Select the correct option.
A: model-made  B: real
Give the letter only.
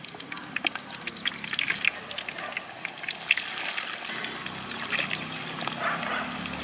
B